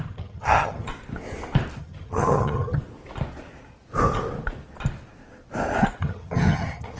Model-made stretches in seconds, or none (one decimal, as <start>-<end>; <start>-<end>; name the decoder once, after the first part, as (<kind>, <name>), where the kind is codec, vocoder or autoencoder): 0.0-0.9 (vocoder, HiFi-GAN); 1.8-2.8; 6.0-7.0